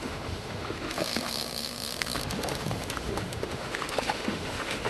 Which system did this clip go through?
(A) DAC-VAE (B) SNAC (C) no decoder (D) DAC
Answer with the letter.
A